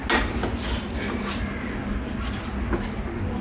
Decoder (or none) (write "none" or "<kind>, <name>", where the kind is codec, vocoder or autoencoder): none